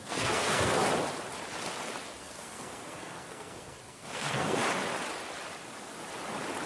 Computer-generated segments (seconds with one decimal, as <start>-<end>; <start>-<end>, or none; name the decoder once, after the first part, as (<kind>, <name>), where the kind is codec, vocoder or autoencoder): 0.0-0.8 (codec, SNAC); 2.2-4.6